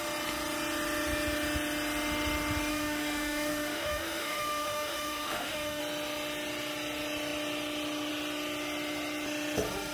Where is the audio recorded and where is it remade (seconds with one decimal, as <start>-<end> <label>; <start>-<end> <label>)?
0.0-2.7 recorded; 2.7-5.8 remade; 5.8-9.9 recorded